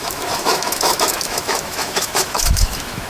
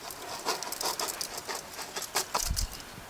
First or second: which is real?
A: second